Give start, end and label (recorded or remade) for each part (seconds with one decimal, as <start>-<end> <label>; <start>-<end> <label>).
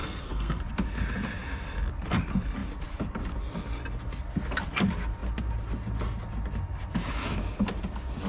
0.0-0.6 remade; 0.6-8.3 recorded